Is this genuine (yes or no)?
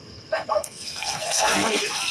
no